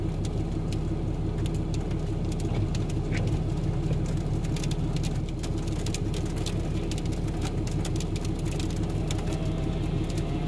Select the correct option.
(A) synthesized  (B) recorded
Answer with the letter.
B